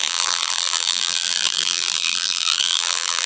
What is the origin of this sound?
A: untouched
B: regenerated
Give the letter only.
B